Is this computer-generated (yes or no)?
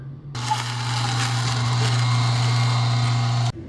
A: no